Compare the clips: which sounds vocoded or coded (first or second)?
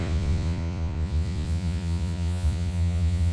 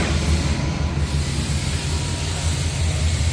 first